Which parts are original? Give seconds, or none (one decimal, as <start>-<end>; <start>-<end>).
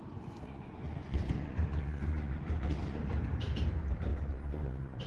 3.1-4.1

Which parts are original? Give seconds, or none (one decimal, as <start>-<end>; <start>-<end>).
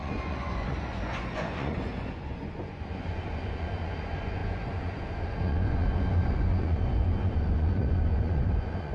none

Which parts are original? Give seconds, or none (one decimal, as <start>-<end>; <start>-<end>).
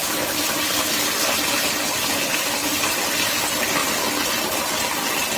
0.0-5.4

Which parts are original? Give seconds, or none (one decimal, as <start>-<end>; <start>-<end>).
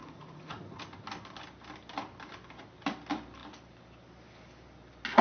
0.8-5.2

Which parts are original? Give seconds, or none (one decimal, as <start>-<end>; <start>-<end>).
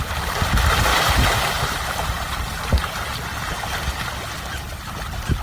0.0-5.4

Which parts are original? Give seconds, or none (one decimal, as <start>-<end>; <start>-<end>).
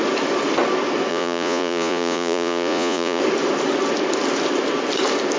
0.0-1.1; 3.2-5.4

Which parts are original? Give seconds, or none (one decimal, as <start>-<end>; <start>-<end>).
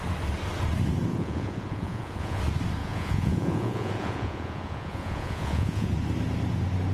0.0-1.1; 2.4-2.8; 5.9-6.9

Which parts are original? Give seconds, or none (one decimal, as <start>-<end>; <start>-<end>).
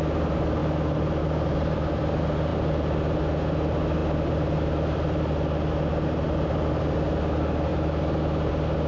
0.0-8.9